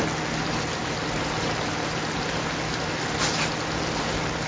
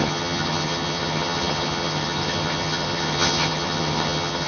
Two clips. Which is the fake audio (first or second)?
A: second